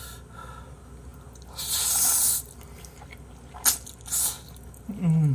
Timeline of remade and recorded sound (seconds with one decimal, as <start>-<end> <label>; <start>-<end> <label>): 0.0-5.3 recorded